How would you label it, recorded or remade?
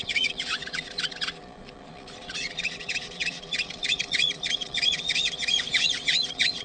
remade